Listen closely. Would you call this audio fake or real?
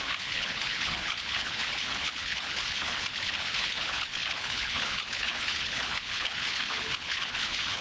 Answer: fake